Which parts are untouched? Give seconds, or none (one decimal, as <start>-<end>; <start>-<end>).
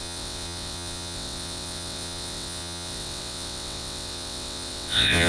none